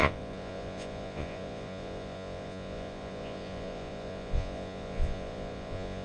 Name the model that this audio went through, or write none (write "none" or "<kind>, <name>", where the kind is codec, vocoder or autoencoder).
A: vocoder, Vocos